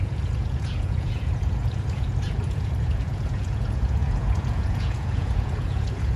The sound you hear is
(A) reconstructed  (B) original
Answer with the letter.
A